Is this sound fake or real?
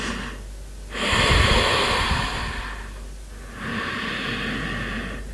real